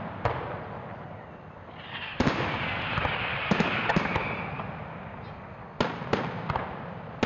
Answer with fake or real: real